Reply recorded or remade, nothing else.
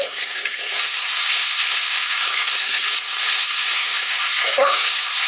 remade